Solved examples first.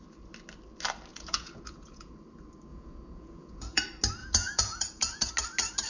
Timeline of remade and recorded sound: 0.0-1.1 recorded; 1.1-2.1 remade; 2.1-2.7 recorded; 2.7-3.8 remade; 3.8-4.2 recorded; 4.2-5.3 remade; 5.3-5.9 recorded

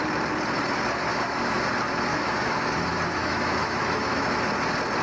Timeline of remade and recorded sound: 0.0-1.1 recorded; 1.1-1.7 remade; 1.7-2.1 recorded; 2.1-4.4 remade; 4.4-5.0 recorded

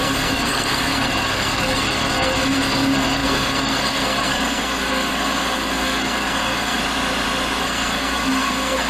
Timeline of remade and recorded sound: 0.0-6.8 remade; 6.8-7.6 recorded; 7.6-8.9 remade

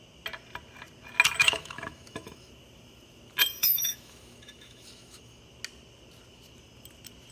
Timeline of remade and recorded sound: 0.0-1.4 recorded; 1.4-2.5 remade; 2.5-3.6 recorded; 3.6-5.4 remade; 5.4-7.3 recorded

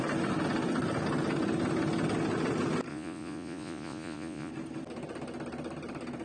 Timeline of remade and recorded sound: 0.0-2.9 recorded; 2.9-4.5 remade; 4.5-6.2 recorded

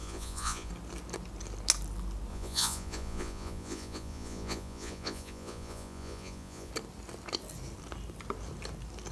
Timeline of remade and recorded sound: 0.0-0.7 remade; 0.7-2.3 recorded; 2.3-6.7 remade; 6.7-9.1 recorded

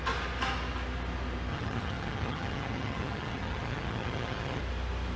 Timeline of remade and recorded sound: 0.0-1.5 recorded; 1.5-4.6 remade; 4.6-5.2 recorded